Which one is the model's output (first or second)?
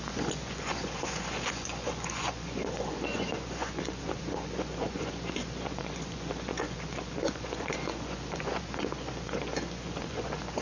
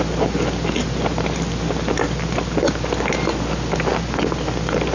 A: first